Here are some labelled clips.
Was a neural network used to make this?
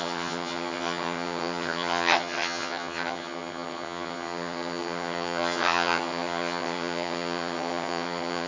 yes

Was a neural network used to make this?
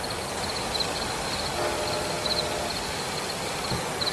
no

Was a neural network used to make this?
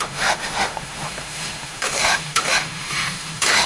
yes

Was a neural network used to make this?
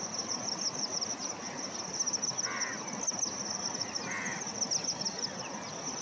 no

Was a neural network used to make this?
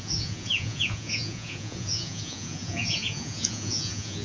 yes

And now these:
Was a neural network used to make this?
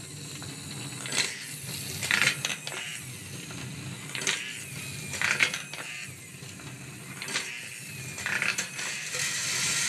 no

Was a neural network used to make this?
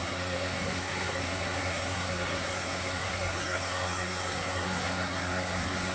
yes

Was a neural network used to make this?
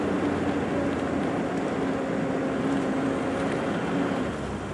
no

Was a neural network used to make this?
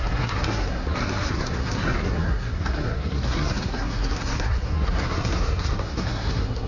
yes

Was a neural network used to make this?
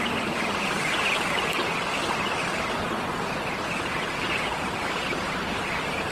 no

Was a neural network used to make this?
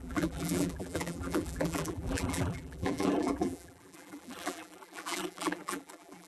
yes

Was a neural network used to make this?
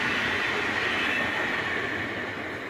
no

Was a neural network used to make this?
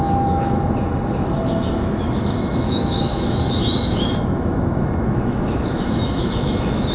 yes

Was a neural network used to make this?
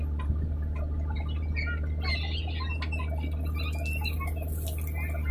no